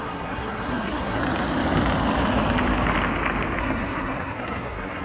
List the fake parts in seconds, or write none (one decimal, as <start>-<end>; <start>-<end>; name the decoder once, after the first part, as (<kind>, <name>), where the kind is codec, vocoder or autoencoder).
0.0-1.2 (codec, SNAC); 3.6-5.0